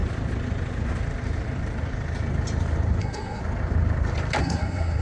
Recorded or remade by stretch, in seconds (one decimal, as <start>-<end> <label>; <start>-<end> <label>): 0.0-3.0 recorded; 3.0-3.4 remade; 3.4-4.4 recorded; 4.4-5.0 remade